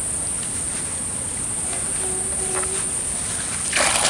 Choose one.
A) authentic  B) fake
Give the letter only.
A